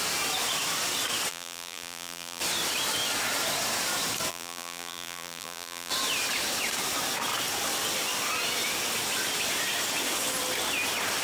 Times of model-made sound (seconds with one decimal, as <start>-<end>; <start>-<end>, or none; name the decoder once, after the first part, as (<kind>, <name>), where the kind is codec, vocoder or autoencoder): 1.3-2.4 (vocoder, BigVGAN v2); 4.3-5.9